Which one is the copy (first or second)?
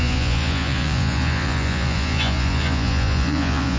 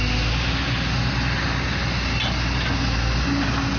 first